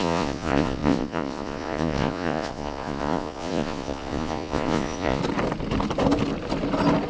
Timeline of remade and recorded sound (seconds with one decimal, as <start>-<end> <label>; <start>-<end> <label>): 0.0-5.2 remade; 5.2-7.1 recorded